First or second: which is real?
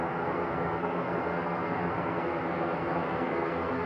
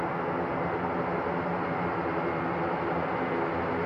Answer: second